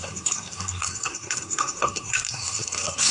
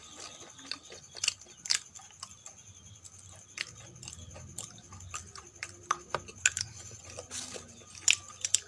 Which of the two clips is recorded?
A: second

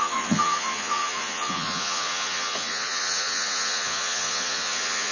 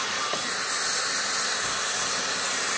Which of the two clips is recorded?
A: second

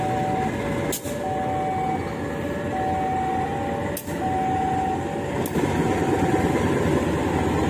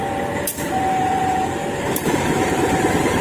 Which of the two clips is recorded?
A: first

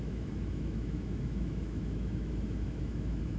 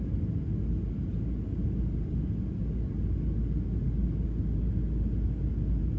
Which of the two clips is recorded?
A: second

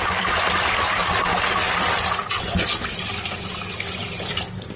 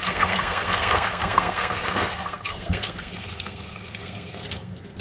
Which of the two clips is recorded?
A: first